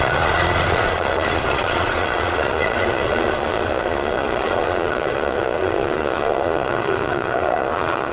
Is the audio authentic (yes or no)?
no